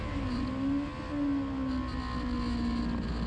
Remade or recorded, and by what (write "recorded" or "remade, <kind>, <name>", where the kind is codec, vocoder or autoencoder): recorded